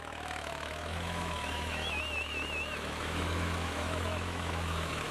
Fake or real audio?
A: fake